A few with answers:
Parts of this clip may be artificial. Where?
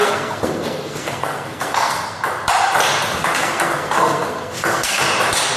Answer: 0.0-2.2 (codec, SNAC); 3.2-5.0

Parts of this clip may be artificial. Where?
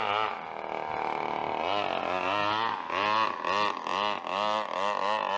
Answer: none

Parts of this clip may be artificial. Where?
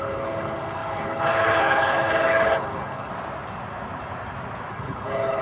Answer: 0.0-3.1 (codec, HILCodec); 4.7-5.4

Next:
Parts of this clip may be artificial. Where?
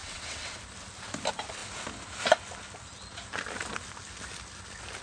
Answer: 0.0-0.6 (vocoder, WaveNeXt)